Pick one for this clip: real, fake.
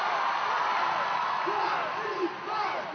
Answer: real